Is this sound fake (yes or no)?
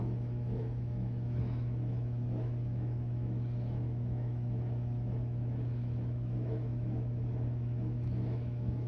yes